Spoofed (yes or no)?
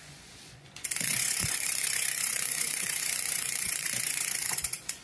yes